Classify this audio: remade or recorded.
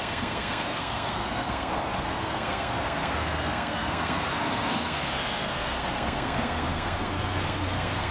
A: remade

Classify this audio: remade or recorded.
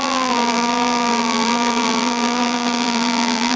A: remade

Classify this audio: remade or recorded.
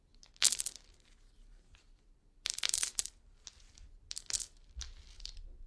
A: recorded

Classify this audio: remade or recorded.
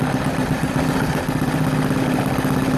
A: recorded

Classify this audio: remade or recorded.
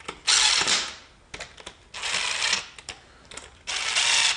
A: recorded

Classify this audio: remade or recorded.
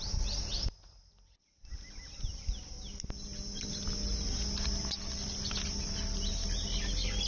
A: recorded